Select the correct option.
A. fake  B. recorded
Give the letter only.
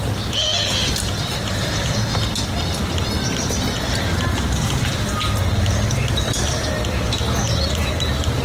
B